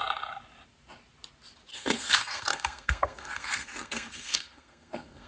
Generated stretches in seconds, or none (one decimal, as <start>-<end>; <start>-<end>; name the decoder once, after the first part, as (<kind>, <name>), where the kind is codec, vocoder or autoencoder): 1.7-5.3 (codec, SNAC)

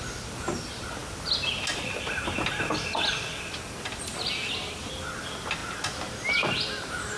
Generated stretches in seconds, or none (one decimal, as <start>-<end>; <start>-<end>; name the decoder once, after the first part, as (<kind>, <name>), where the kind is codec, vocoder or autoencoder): none

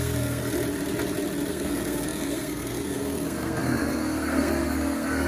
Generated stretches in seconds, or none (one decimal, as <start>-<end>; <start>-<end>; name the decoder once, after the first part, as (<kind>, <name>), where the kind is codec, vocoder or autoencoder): 0.0-0.4 (codec, SNAC); 1.5-5.3

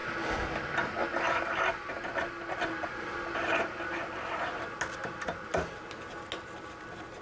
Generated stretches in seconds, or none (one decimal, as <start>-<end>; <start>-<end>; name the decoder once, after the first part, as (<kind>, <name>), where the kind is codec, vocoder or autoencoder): none

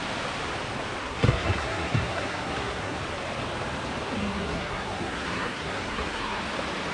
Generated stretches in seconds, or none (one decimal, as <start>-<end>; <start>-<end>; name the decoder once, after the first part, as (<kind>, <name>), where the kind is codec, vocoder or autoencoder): 1.0-3.0 (codec, SNAC); 4.2-6.4